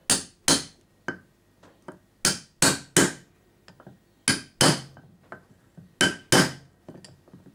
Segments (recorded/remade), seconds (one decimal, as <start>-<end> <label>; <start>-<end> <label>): 0.0-7.5 recorded